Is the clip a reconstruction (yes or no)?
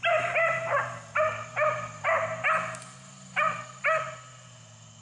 no